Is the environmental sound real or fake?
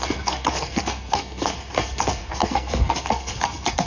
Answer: fake